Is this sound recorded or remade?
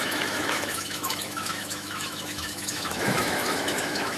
remade